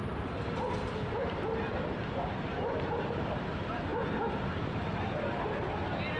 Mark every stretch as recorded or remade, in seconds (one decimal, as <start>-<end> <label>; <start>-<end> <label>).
0.0-6.2 recorded

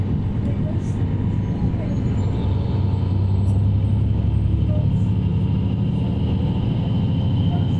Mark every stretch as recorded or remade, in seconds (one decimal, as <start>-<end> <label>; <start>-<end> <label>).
0.0-7.8 recorded

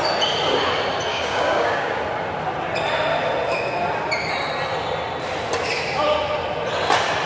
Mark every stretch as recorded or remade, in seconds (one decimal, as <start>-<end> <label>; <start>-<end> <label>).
0.0-1.1 recorded; 1.1-2.0 remade; 2.0-7.3 recorded

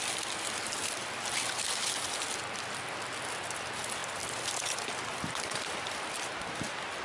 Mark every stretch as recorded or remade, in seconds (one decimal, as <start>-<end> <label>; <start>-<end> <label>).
0.0-4.0 recorded; 4.0-6.4 remade; 6.4-7.0 recorded

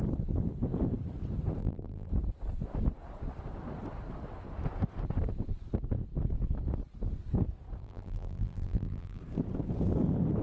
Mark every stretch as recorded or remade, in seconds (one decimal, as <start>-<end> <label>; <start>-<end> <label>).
0.0-1.6 recorded; 1.6-2.1 remade; 2.1-7.8 recorded; 7.8-9.2 remade; 9.2-10.4 recorded

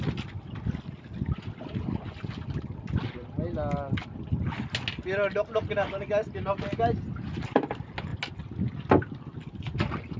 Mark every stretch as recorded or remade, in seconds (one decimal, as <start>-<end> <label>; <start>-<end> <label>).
0.0-10.2 recorded